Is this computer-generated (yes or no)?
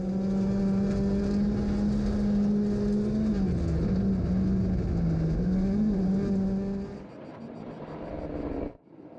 no